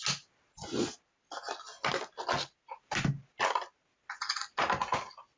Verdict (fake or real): real